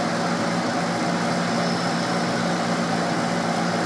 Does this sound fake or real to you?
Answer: real